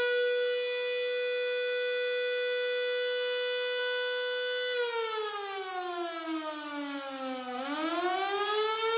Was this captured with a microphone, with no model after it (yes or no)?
yes